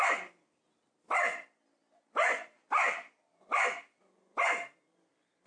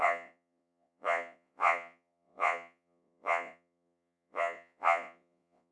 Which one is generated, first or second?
second